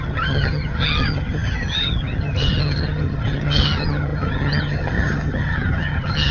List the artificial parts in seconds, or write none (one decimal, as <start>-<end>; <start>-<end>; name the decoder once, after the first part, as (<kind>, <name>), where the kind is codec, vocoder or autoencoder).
0.0-6.3 (vocoder, HiFi-GAN)